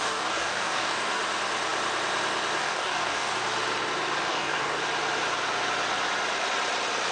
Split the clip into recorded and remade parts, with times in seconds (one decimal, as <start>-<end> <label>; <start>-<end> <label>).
0.0-1.2 remade; 1.2-2.6 recorded; 2.6-3.3 remade; 3.3-4.3 recorded; 4.3-4.8 remade; 4.8-7.1 recorded